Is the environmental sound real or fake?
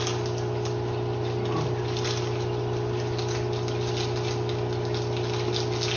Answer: real